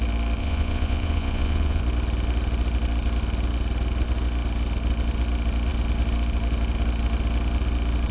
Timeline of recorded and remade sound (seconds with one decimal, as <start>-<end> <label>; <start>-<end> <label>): 0.0-0.4 recorded; 0.4-1.8 remade; 1.8-8.1 recorded